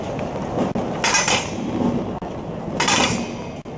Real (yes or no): yes